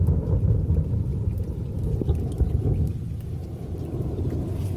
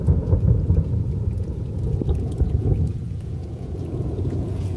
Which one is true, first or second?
first